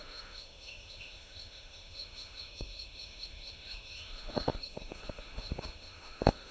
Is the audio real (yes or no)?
no